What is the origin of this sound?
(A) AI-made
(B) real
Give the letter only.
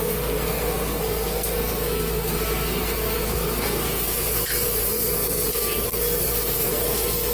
A